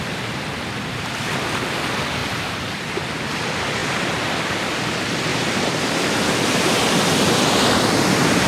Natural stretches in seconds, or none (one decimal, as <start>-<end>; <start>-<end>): 0.0-2.2; 3.3-3.8; 4.6-5.3; 6.8-8.5